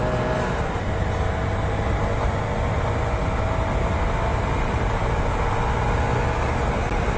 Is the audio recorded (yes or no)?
yes